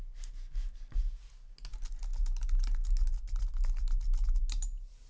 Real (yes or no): yes